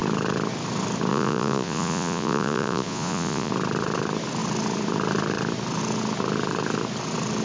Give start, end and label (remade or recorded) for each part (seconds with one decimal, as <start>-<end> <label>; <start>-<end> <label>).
0.0-1.1 recorded; 1.1-3.5 remade; 3.5-7.4 recorded